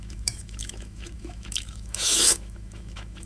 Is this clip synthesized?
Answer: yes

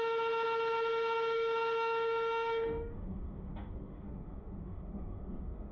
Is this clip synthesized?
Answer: yes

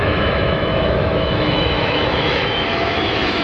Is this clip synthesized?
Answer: yes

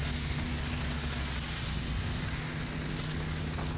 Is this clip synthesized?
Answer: no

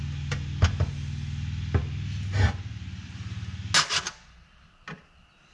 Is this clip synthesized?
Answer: no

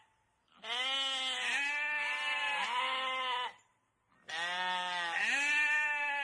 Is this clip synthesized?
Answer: no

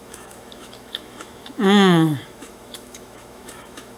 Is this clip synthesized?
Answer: yes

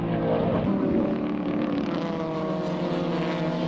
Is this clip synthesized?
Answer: no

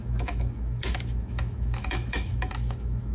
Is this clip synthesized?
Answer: yes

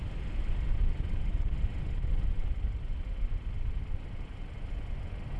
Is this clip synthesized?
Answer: no